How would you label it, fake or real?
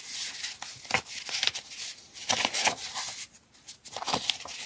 real